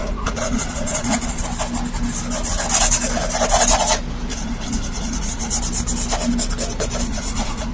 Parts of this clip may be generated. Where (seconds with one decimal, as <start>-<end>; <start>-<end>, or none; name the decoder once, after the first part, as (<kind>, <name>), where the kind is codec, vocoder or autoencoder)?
0.0-1.4 (vocoder, Vocos); 4.3-5.6; 7.1-7.7